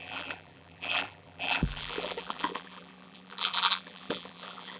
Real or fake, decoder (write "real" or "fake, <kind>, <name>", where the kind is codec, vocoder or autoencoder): fake, vocoder, BigVGAN v2